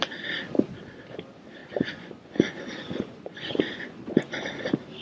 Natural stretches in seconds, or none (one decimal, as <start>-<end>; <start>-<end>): 0.0-1.6; 4.4-5.0